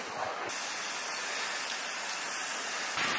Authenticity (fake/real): real